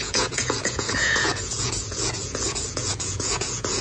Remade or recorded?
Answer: remade